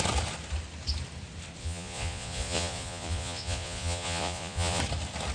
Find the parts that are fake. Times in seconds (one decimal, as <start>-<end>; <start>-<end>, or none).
1.6-4.8